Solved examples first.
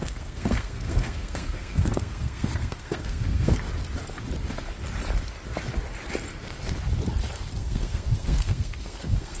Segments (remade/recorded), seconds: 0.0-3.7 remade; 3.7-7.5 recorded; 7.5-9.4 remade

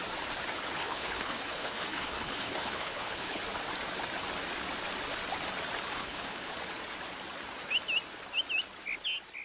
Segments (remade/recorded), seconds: 0.0-0.8 recorded; 0.8-3.4 remade; 3.4-5.9 recorded; 5.9-6.5 remade; 6.5-9.4 recorded

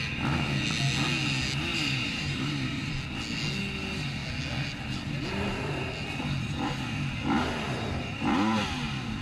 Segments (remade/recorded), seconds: 0.0-1.7 recorded; 1.7-2.9 remade; 2.9-9.2 recorded

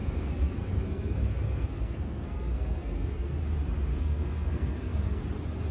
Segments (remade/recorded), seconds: 0.0-3.4 remade; 3.4-3.9 recorded; 3.9-5.2 remade; 5.2-5.7 recorded